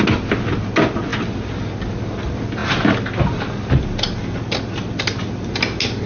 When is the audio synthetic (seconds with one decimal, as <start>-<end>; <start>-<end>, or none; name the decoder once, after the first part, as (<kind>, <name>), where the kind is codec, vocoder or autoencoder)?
none